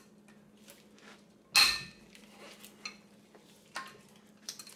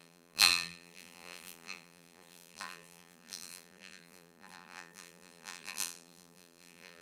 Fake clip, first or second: second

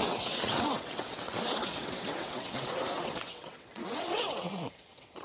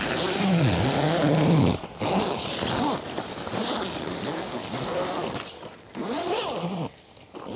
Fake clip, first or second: first